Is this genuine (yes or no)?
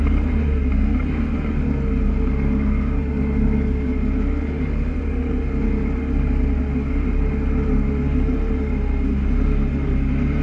yes